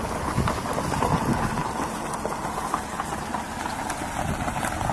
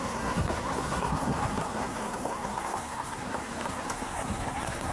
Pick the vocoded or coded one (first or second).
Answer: second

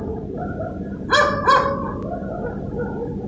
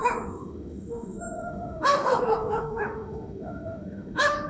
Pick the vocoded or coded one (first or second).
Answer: second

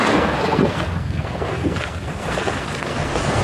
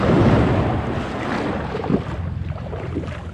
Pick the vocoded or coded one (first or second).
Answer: first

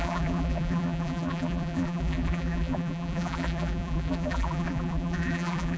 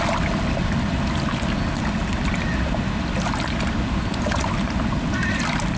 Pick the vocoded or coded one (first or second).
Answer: first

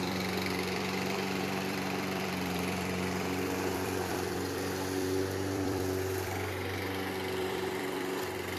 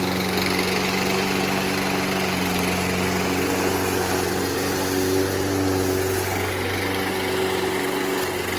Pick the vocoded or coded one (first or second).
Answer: first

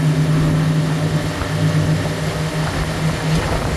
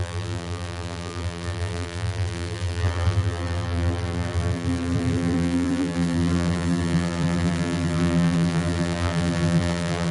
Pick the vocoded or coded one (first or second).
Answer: second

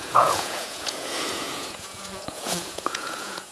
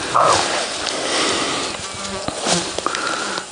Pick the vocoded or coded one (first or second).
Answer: first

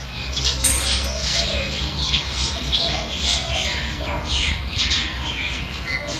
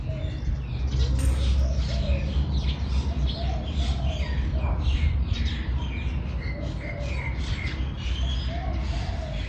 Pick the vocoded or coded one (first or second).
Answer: first